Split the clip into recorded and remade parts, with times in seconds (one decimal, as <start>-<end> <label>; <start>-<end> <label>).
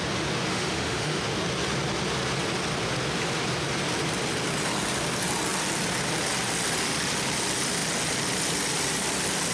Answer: 0.0-0.5 recorded; 0.5-1.2 remade; 1.2-9.5 recorded